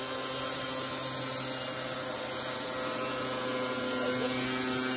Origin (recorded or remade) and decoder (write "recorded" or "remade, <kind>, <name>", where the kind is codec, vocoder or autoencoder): recorded